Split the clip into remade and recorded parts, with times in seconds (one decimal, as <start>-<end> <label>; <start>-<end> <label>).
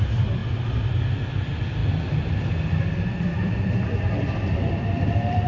0.0-0.4 remade; 0.4-1.3 recorded; 1.3-5.5 remade